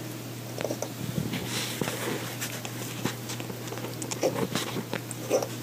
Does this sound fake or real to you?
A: real